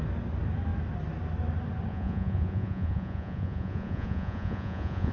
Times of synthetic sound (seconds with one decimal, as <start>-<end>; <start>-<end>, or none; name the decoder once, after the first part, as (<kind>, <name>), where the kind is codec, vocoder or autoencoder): 1.9-5.1 (vocoder, Vocos)